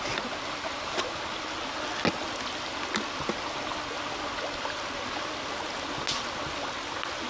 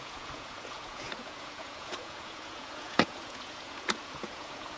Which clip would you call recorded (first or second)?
first